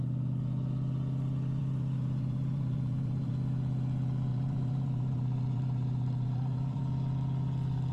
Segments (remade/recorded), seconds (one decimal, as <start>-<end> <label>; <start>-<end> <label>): 0.0-1.6 recorded; 1.6-3.3 remade; 3.3-4.3 recorded; 4.3-6.8 remade; 6.8-7.9 recorded